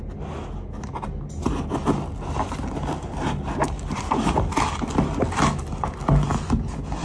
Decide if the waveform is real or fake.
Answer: real